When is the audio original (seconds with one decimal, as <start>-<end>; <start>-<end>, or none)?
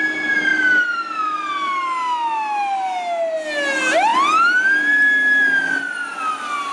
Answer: 0.0-0.5; 1.2-6.7